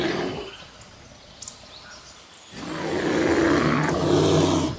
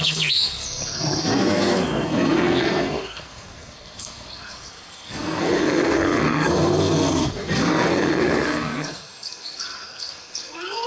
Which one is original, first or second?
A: first